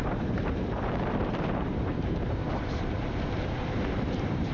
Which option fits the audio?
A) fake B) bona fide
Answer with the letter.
A